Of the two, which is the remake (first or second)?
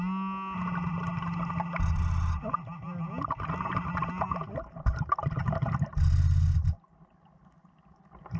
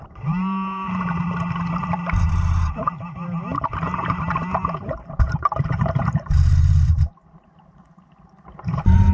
second